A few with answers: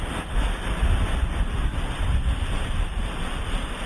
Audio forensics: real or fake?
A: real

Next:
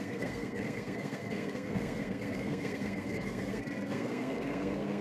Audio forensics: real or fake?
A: fake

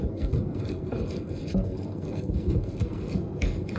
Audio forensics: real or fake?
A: fake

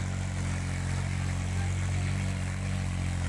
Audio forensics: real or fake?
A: real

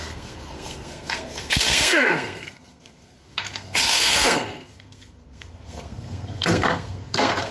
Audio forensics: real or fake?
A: fake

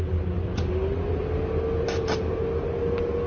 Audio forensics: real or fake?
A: real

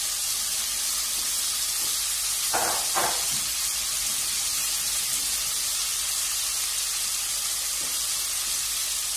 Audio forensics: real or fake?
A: real